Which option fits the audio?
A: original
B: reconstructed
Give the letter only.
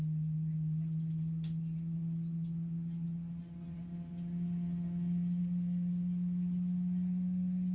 A